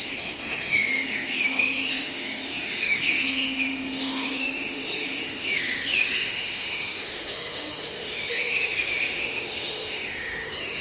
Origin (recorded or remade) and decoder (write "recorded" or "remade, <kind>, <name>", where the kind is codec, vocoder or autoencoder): remade, autoencoder, DAC-VAE